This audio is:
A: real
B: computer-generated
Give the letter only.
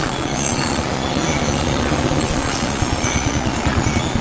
B